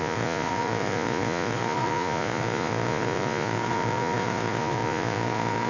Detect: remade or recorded remade